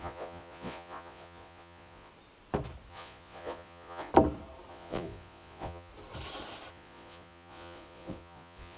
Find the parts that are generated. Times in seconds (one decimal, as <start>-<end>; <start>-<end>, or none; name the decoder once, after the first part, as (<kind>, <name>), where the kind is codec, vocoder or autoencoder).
0.0-2.1 (vocoder, Vocos); 2.9-4.1; 4.7-5.9; 6.7-8.8